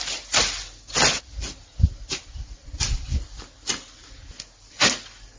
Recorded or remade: recorded